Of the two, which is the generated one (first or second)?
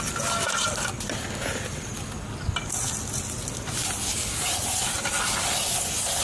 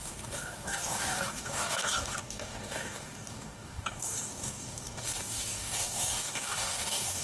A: second